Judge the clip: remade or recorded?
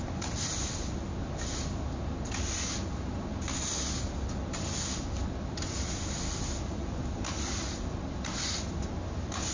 recorded